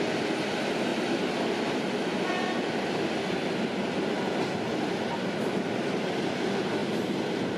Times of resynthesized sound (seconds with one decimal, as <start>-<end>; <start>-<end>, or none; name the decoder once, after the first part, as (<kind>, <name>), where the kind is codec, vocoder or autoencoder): none

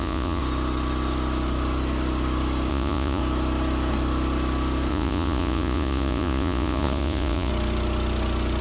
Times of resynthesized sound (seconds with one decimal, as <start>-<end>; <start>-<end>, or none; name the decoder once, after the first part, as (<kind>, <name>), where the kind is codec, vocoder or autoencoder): 0.0-0.4 (vocoder, Vocos); 2.7-3.2; 4.9-7.5

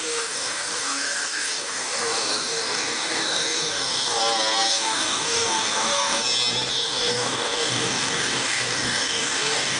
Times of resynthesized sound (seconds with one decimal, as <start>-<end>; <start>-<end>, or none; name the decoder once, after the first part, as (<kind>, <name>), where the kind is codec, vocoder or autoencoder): 0.0-4.2 (codec, DAC); 4.7-6.2; 6.7-9.8